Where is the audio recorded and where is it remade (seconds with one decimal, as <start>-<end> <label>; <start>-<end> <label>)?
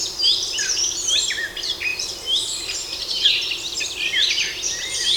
0.0-1.9 recorded; 1.9-4.3 remade; 4.3-5.2 recorded